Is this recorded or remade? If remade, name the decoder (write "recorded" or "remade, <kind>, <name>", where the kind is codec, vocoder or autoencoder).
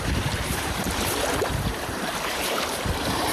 remade, vocoder, BigVGAN v2